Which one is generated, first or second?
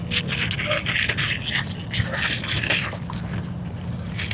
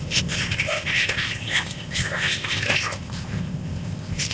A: second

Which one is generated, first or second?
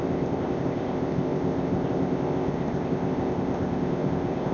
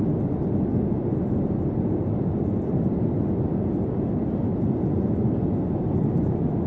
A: first